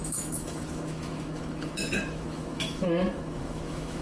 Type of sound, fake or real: fake